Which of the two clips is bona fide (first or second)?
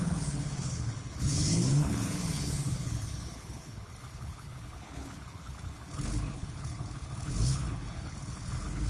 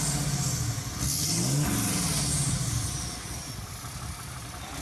second